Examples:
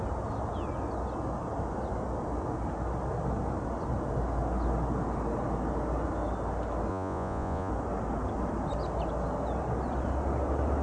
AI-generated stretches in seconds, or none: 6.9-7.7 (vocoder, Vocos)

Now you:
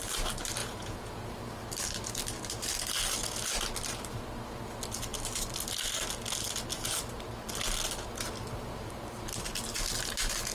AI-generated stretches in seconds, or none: 0.6-1.3 (vocoder, Vocos)

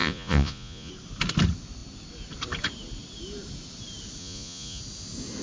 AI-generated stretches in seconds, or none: 0.0-0.9 (vocoder, Vocos); 4.2-4.8

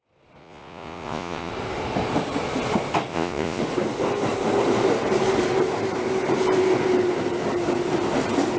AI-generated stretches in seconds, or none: 0.4-1.5 (vocoder, Vocos); 3.1-3.6

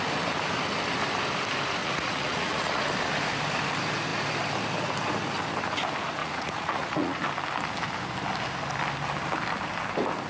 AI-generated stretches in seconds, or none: 1.8-2.8 (vocoder, Vocos); 6.2-7.2

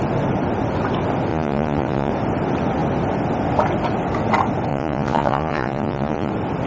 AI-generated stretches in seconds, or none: 1.3-2.1 (vocoder, Vocos); 4.7-6.3